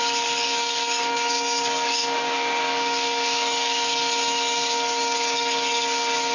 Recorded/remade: remade